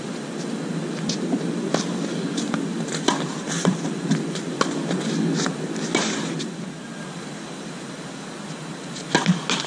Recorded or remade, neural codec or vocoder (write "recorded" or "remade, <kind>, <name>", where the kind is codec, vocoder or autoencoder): recorded